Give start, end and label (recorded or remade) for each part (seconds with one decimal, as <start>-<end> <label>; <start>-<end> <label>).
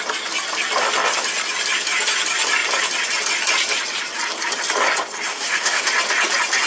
0.0-5.3 recorded; 5.3-5.8 remade; 5.8-6.7 recorded